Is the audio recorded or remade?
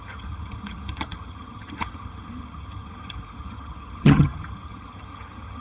remade